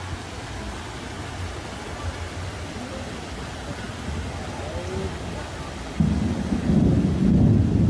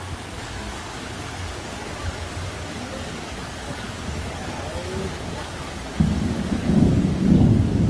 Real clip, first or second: first